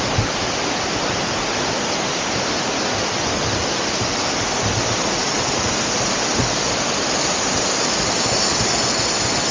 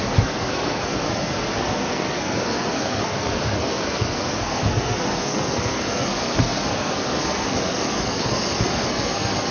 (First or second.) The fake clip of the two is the second